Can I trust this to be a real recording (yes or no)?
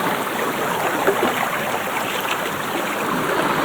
yes